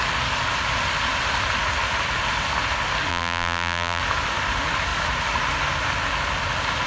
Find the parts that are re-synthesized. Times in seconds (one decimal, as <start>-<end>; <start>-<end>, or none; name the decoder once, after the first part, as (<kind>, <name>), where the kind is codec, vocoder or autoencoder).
3.1-4.0 (vocoder, BigVGAN v2)